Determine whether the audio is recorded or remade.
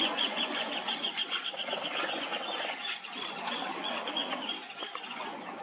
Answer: remade